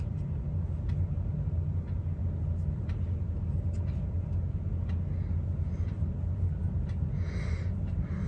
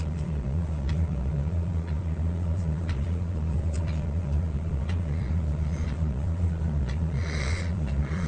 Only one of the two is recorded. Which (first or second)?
first